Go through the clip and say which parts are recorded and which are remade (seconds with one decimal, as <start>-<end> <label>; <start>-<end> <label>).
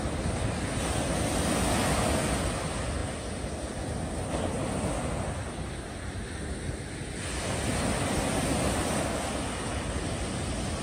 0.0-10.8 recorded